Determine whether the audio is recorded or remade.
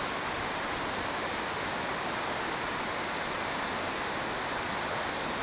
recorded